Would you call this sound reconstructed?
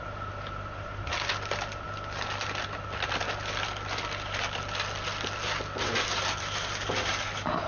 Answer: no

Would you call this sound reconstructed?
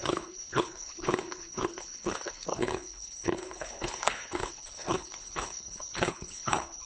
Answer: yes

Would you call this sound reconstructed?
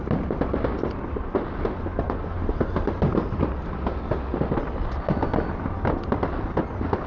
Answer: no